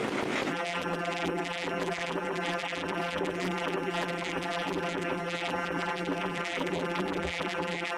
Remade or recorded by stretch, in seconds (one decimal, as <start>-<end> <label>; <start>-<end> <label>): 0.0-0.5 recorded; 0.5-8.0 remade